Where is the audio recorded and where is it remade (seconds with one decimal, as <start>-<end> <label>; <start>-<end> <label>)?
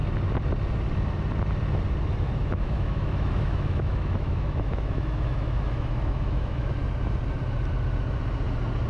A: 0.0-2.4 recorded; 2.4-6.7 remade; 6.7-8.9 recorded